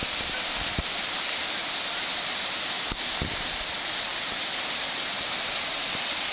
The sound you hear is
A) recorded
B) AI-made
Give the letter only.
A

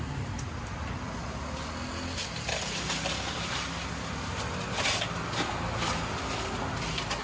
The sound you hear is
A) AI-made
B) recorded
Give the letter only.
B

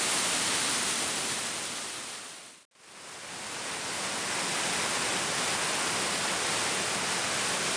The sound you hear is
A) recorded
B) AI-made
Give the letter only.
A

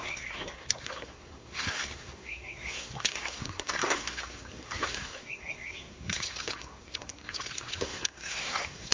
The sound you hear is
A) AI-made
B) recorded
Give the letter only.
A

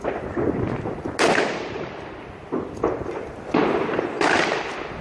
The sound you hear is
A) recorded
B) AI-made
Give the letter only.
A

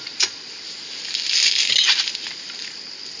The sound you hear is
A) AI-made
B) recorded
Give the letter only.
B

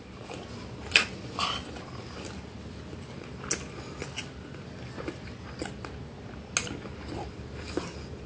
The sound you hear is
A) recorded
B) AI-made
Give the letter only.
A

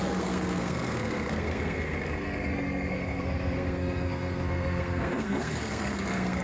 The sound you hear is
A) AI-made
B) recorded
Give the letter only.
A